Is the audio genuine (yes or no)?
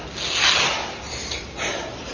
yes